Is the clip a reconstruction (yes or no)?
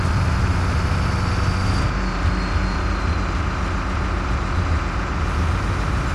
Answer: no